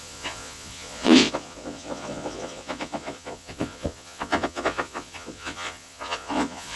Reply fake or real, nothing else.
fake